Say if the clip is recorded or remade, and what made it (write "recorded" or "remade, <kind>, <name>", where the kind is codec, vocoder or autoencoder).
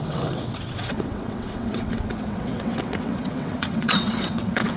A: remade, vocoder, WaveNeXt